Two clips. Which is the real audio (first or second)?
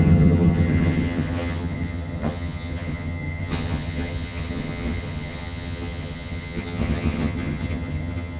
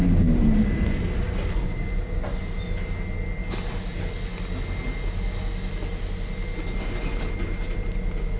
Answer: second